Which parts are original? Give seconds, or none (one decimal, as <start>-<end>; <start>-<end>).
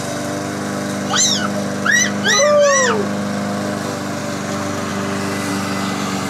0.0-6.3